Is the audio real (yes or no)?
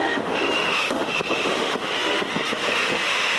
no